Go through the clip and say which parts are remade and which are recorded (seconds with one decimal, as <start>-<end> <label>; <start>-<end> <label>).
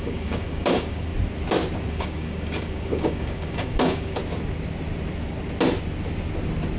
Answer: 0.0-1.1 remade; 1.1-1.9 recorded; 1.9-4.2 remade; 4.2-6.8 recorded